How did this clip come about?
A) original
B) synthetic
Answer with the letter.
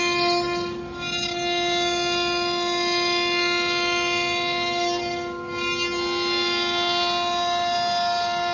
A